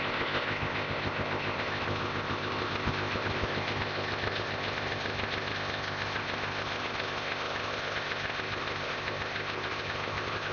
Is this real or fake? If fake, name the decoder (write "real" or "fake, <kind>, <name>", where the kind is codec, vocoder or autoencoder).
fake, codec, ZipCodec